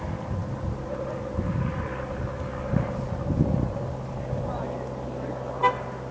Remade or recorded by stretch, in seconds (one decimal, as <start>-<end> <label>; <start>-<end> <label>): 0.0-6.1 recorded